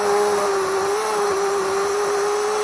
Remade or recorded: recorded